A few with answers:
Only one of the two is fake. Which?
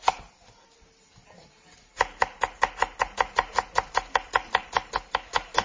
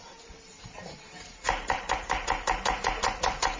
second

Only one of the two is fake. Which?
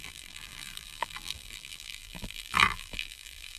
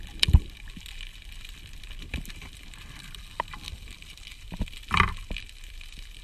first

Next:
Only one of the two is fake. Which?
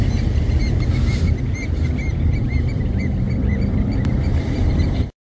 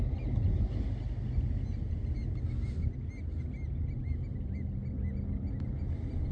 first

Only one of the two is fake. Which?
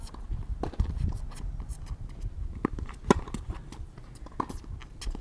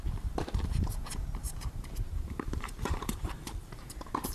second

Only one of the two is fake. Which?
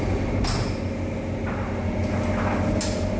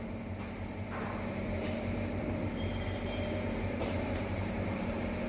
second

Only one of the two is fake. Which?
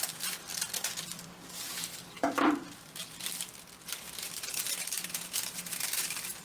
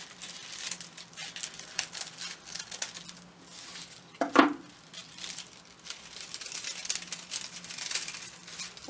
first